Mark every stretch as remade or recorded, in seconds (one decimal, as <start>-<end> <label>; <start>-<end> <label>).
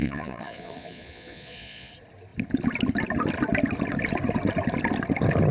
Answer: 0.0-1.9 remade; 1.9-5.5 recorded